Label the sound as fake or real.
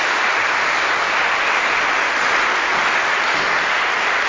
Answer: real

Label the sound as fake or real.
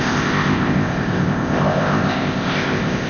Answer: fake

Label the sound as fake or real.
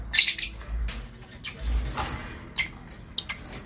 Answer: real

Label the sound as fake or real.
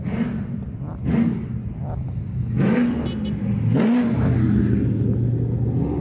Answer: real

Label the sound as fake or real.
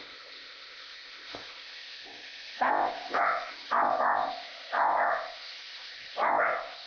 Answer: fake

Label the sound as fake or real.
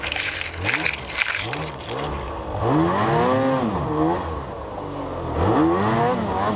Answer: real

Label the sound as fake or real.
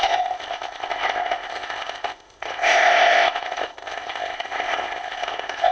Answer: fake